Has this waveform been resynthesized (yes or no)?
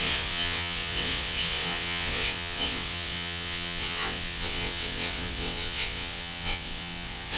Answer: yes